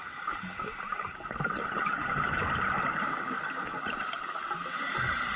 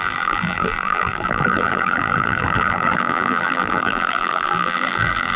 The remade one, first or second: second